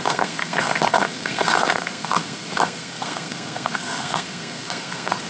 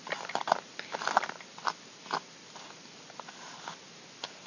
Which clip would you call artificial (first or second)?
first